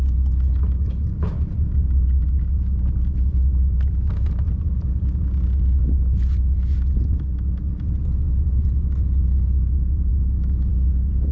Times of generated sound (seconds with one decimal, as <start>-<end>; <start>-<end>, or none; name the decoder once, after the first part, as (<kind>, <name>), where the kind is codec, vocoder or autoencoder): 10.1-10.7 (autoencoder, DAC-VAE)